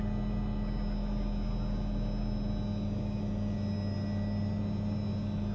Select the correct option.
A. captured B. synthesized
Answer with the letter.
A